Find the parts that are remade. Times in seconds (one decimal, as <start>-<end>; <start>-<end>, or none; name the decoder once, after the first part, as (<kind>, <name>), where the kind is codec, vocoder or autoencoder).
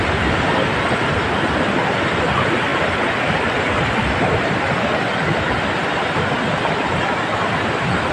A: none